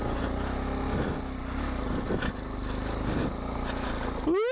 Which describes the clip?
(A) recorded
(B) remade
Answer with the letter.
A